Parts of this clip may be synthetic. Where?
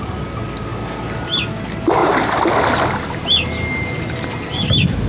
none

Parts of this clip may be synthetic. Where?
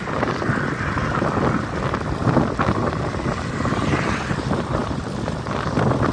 none